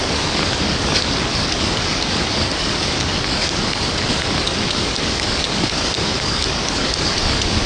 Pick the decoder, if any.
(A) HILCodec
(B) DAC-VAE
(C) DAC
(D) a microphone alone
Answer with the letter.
C